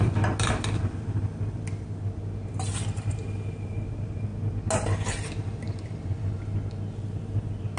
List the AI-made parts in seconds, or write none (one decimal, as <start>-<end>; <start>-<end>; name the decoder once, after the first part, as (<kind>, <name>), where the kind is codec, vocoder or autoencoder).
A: none